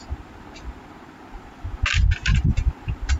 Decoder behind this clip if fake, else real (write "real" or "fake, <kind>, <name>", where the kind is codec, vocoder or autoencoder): real